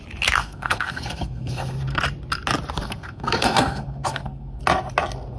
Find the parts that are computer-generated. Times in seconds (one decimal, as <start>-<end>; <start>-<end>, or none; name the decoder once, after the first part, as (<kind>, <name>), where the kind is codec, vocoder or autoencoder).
0.4-2.0 (codec, SNAC); 2.8-4.6